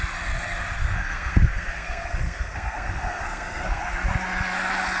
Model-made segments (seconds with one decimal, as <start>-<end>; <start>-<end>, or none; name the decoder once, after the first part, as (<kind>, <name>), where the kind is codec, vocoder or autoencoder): 0.8-3.8 (codec, SNAC)